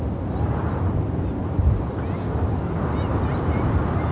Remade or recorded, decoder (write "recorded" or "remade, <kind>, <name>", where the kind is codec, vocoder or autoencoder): recorded